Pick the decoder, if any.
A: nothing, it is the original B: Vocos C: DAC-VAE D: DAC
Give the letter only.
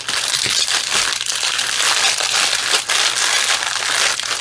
A